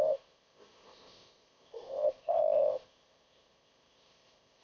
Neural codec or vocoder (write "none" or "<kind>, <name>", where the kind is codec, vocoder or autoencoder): codec, ZipCodec